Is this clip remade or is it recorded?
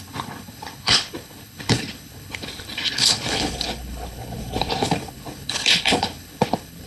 remade